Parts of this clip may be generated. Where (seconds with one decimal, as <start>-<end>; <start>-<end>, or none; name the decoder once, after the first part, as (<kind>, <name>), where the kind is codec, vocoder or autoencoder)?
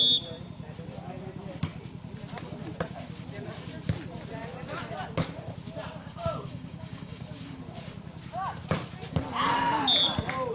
6.0-7.6 (codec, DAC)